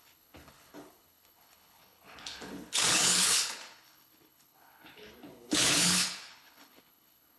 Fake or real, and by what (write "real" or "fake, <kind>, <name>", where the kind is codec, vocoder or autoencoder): fake, codec, HILCodec